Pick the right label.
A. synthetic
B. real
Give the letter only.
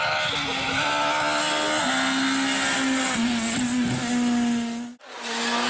B